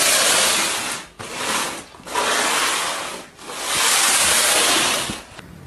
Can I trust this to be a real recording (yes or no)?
yes